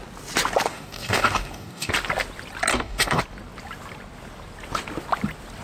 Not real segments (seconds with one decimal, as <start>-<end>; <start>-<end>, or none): 0.7-1.9; 2.7-3.2